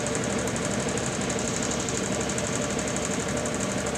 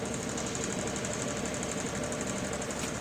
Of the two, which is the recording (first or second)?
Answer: first